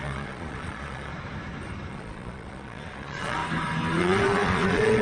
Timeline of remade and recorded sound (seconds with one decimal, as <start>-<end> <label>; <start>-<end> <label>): 0.0-1.1 remade; 1.1-1.9 recorded; 1.9-3.4 remade; 3.4-4.0 recorded; 4.0-5.0 remade